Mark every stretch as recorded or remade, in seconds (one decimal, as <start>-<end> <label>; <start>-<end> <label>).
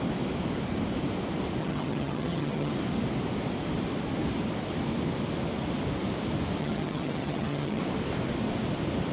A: 0.0-1.6 recorded; 1.6-2.7 remade; 2.7-6.6 recorded; 6.6-7.8 remade; 7.8-9.1 recorded